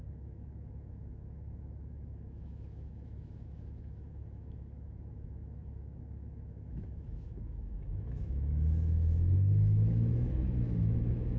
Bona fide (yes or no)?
no